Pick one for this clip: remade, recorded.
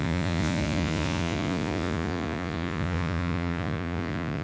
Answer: remade